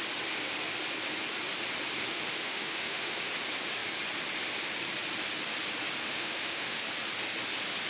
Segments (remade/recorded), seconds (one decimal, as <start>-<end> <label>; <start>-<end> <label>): 0.0-2.1 recorded; 2.1-3.3 remade; 3.3-6.0 recorded; 6.0-6.8 remade; 6.8-7.9 recorded

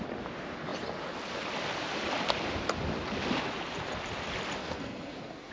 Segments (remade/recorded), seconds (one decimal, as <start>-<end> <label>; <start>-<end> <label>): 0.0-4.6 recorded; 4.6-5.5 remade

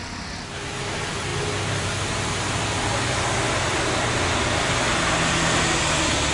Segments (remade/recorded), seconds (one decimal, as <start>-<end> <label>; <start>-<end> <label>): 0.0-6.3 recorded